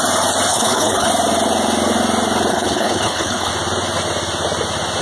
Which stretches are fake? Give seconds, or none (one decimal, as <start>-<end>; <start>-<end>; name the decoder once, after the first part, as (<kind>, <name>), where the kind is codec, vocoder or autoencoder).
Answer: 0.5-1.1 (codec, HILCodec); 2.5-3.5